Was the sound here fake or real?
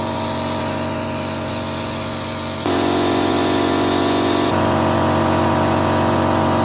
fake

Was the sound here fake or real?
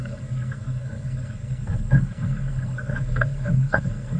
fake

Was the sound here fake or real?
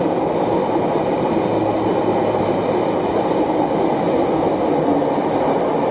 real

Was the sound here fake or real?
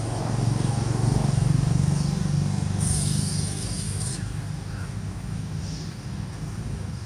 fake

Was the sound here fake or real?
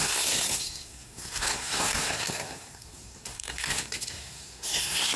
fake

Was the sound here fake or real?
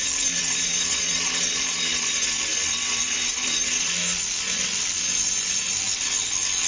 real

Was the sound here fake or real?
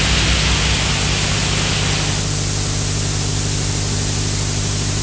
real